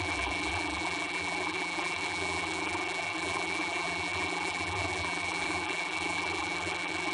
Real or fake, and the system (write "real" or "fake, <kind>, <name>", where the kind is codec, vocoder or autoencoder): fake, vocoder, BigVGAN v2